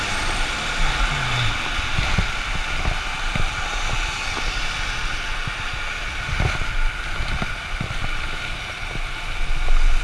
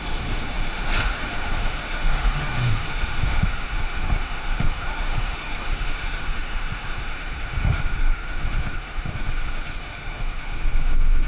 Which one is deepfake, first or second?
second